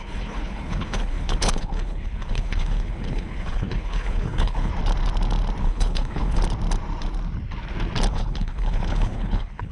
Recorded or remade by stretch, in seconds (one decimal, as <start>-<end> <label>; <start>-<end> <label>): 0.0-4.7 remade; 4.7-5.6 recorded; 5.6-6.4 remade; 6.4-8.1 recorded; 8.1-9.7 remade